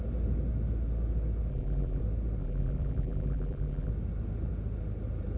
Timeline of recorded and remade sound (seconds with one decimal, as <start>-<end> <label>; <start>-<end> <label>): 0.0-1.5 recorded; 1.5-2.0 remade; 2.0-2.4 recorded; 2.4-3.9 remade; 3.9-5.4 recorded